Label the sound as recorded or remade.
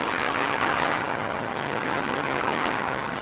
remade